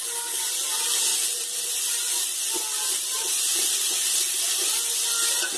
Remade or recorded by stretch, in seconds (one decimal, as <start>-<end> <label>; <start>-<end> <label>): 0.0-5.6 recorded